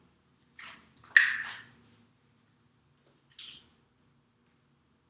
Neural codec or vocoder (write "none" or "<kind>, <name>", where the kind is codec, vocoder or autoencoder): none